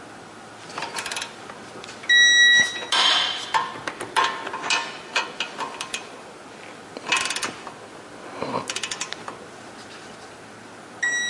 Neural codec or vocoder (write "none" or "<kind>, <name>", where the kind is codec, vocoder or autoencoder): none